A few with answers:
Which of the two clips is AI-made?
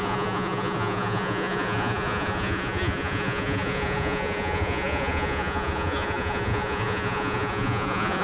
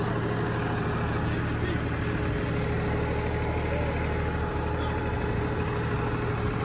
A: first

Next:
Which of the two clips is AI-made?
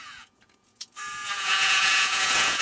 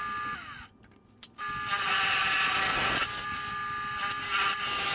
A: first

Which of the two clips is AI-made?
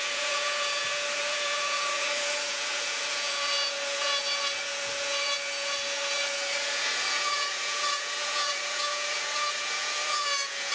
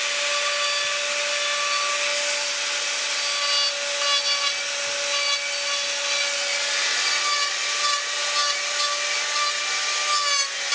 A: first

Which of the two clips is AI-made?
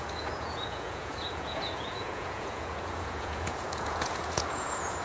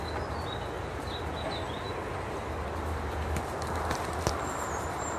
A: first